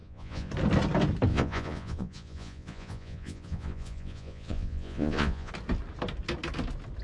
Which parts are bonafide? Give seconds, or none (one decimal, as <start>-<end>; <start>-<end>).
0.5-1.3; 5.5-7.0